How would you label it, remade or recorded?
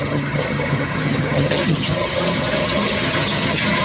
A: remade